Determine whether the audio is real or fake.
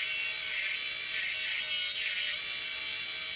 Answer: real